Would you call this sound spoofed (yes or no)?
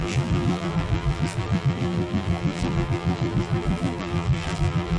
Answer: yes